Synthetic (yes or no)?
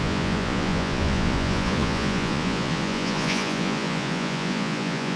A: yes